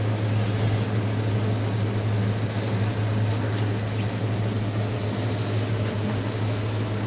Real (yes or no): yes